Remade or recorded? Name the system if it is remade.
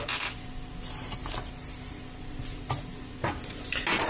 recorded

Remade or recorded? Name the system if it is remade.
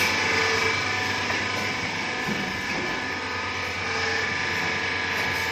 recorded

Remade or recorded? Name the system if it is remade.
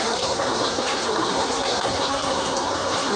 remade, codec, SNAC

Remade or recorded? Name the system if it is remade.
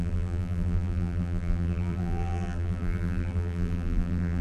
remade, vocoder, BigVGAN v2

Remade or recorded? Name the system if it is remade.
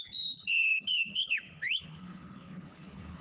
remade, codec, HILCodec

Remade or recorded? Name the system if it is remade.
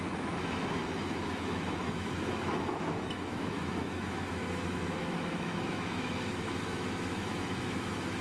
remade, autoencoder, DAC-VAE